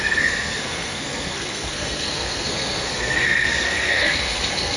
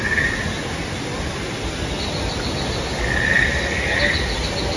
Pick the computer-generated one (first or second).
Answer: first